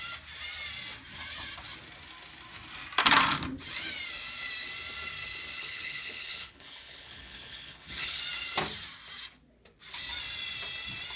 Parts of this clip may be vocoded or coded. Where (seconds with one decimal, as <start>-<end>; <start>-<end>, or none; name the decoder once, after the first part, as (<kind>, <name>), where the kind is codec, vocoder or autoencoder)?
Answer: 5.6-8.2 (codec, HILCodec)